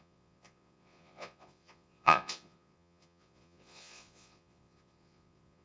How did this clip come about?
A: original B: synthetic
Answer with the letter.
B